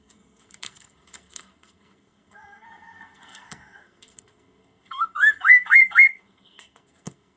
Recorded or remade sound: remade